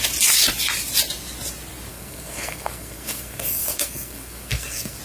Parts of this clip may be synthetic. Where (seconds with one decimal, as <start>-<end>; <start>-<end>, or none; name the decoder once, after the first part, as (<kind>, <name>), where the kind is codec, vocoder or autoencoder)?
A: 1.9-5.0 (codec, SNAC)